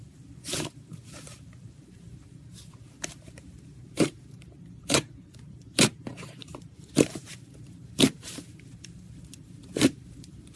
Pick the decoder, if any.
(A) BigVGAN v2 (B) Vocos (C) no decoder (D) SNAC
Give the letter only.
A